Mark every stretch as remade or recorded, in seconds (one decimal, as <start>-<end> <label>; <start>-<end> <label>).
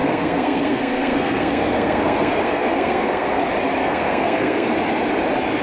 0.0-3.4 remade; 3.4-3.8 recorded; 3.8-4.7 remade; 4.7-5.6 recorded